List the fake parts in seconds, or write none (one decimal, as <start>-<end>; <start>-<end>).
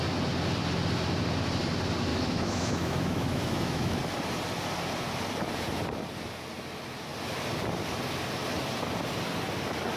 2.1-4.0